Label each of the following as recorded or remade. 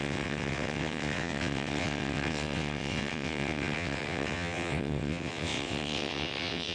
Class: remade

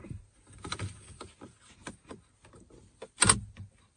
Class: recorded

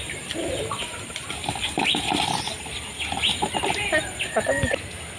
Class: recorded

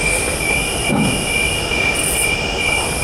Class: recorded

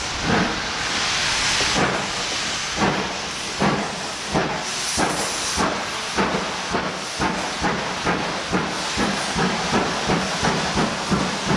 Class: recorded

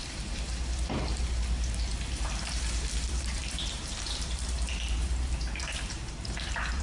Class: remade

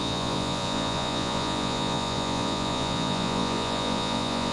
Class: remade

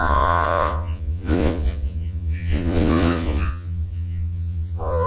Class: remade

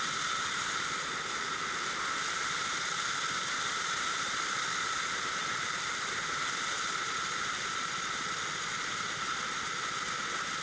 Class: recorded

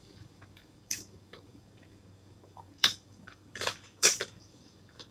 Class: remade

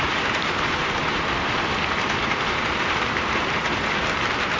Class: remade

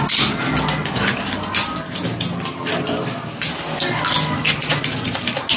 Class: recorded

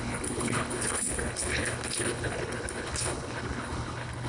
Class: remade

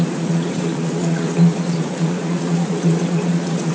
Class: remade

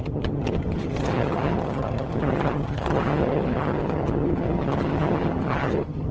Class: remade